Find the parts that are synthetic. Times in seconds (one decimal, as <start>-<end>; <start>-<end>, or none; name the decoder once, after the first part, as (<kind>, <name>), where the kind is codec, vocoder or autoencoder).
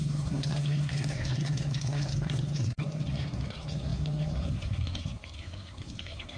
0.0-6.4 (codec, SNAC)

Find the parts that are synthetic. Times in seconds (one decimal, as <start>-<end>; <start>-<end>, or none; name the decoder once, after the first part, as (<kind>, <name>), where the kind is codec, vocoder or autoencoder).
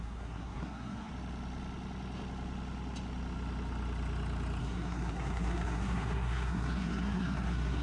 0.0-1.1 (codec, SNAC); 4.6-7.8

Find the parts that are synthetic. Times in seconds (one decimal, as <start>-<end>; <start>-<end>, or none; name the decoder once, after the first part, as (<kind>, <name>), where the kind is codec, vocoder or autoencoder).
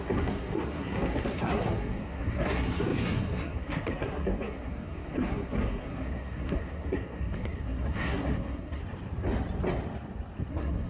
0.0-8.8 (codec, SNAC); 10.5-10.9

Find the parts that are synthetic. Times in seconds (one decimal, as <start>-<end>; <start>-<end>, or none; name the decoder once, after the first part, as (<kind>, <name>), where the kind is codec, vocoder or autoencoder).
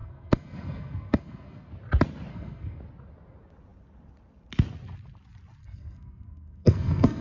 0.0-1.7 (codec, SNAC); 2.3-2.8; 5.6-7.2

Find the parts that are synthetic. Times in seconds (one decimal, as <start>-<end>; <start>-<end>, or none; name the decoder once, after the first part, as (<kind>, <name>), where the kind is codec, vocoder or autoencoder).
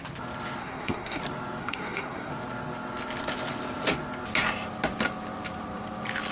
0.6-1.2 (codec, SNAC); 1.6-2.3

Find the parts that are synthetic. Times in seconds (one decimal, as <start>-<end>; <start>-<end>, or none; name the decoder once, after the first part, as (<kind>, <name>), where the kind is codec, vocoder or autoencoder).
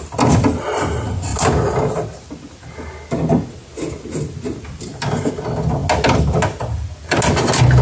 none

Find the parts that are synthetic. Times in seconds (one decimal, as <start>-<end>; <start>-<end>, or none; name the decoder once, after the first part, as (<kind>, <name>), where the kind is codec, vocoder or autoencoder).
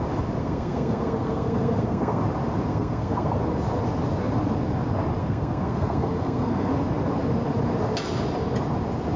0.4-2.2 (codec, SNAC); 2.7-3.4; 5.2-6.7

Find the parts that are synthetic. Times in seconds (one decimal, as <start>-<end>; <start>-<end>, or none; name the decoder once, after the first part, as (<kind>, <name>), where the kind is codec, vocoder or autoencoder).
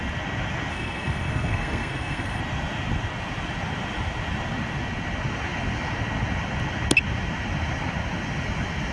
0.7-2.4 (codec, SNAC)